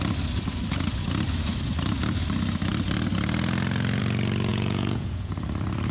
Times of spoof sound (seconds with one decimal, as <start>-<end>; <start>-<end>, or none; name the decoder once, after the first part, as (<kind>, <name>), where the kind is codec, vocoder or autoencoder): 4.5-5.3 (vocoder, Vocos)

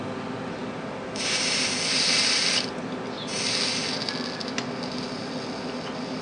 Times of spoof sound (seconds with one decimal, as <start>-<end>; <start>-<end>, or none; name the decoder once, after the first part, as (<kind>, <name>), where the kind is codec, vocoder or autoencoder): none

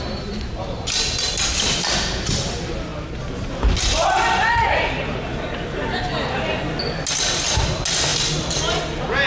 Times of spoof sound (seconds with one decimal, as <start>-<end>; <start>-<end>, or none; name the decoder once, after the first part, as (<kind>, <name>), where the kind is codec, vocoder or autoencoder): none

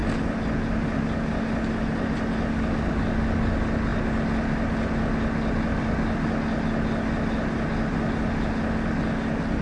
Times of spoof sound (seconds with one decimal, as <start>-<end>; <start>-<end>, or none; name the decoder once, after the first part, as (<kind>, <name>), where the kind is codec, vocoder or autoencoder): none

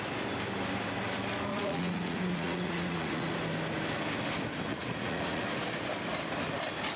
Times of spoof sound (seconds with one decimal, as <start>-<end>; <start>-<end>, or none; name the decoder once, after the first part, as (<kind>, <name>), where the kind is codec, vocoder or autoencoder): 1.5-3.3 (vocoder, Vocos); 4.7-5.4